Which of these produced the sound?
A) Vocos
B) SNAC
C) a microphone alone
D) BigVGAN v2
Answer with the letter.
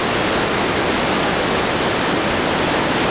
C